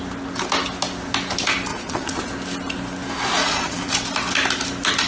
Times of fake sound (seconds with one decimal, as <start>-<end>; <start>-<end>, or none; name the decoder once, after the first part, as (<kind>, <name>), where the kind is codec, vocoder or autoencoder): 1.7-2.2 (vocoder, Vocos); 3.4-3.9